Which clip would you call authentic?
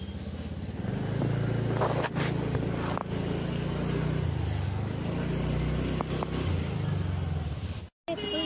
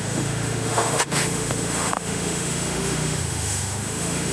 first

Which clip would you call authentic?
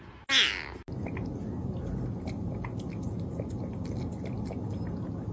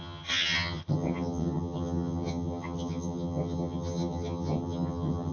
first